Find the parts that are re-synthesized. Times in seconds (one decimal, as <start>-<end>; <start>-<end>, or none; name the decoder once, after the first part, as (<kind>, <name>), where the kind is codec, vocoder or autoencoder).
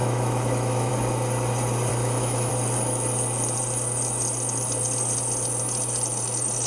0.0-0.9 (autoencoder, DAC-VAE); 1.9-2.5